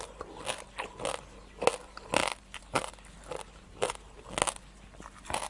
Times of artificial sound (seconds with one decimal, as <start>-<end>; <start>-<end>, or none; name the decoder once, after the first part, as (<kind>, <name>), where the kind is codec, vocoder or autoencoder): 2.2-2.9 (vocoder, BigVGAN v2)